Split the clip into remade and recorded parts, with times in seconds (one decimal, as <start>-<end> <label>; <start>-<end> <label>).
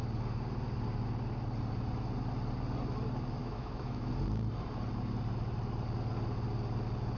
0.0-3.4 recorded; 3.4-4.1 remade; 4.1-7.2 recorded